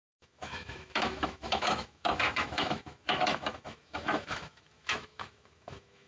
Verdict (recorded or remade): remade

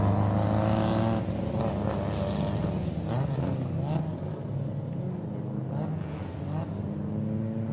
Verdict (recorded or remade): recorded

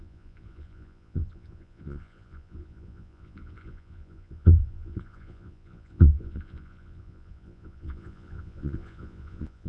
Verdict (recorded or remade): remade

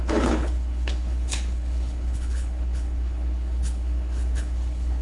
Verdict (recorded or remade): remade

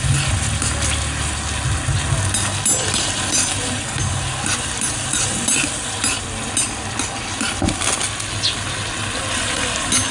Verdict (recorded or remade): recorded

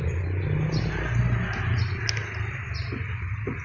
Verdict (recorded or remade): recorded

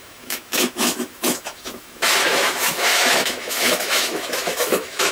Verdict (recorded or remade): remade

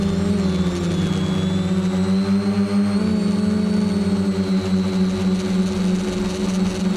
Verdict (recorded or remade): recorded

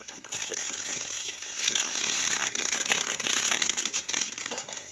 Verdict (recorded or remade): remade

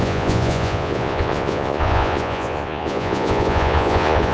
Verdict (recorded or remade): remade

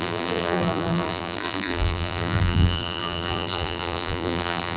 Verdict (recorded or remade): remade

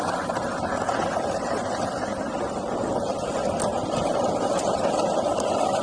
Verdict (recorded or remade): recorded